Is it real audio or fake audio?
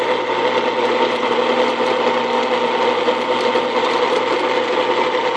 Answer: real